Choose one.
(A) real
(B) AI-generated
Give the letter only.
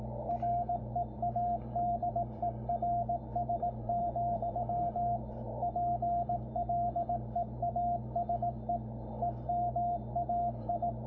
B